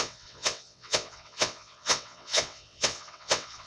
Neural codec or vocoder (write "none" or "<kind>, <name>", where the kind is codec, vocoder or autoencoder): vocoder, WaveNeXt